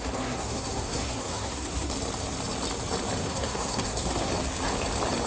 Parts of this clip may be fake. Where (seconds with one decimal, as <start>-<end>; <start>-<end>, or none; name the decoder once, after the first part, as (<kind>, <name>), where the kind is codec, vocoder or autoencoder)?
0.0-1.9 (codec, SNAC); 3.2-4.3